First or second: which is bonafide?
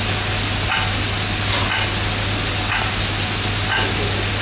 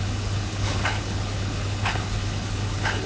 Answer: first